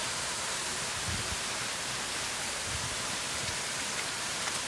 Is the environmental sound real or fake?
fake